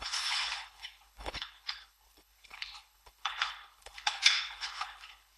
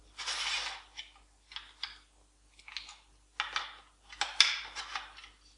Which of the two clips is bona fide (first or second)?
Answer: second